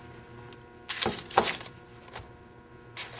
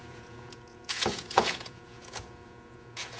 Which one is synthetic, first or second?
second